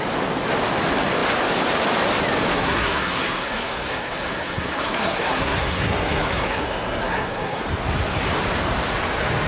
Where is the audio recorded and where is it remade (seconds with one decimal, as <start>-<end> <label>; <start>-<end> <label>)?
0.0-2.5 recorded; 2.5-7.6 remade; 7.6-9.5 recorded